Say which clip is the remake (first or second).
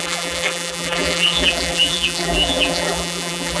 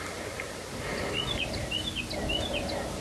first